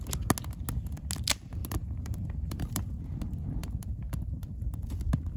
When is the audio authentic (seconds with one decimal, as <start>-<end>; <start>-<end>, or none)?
0.0-1.6; 3.0-3.6; 4.7-5.4